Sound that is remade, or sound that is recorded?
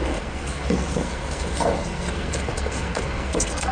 remade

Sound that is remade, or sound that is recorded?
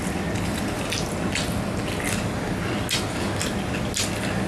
recorded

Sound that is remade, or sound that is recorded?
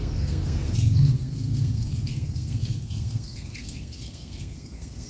remade